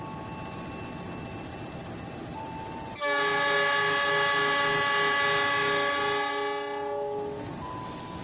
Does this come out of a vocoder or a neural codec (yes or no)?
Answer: no